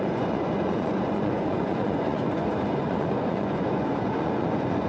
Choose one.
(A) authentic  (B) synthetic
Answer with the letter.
B